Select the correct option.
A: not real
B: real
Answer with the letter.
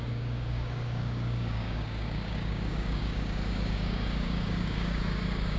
A